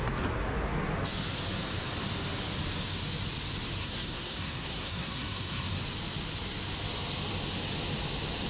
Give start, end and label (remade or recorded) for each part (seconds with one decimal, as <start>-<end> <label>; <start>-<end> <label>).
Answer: 0.0-3.8 recorded; 3.8-5.8 remade; 5.8-8.5 recorded